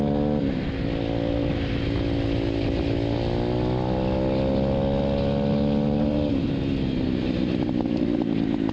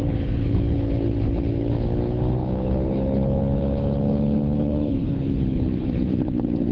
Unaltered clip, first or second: first